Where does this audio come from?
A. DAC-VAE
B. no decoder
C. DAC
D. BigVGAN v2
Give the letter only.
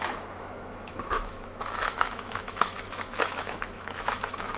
A